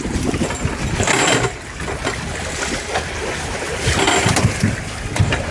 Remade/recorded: recorded